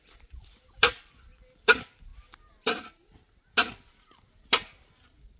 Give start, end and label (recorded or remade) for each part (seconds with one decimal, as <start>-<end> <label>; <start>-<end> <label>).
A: 0.0-2.1 remade; 2.1-3.9 recorded; 3.9-5.4 remade